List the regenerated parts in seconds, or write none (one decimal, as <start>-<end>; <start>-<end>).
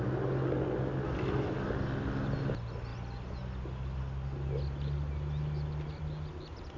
none